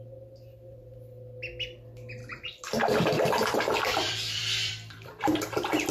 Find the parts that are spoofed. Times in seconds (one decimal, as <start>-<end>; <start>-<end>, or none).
2.2-5.9